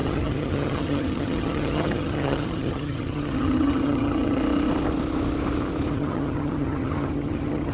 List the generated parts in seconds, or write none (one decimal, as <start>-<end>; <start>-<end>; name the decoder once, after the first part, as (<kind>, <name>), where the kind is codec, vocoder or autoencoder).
0.0-4.4 (vocoder, HiFi-GAN); 5.9-7.7